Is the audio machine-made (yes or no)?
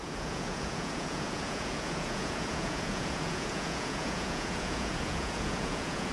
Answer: yes